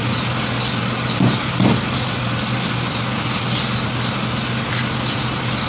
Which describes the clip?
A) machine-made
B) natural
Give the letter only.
B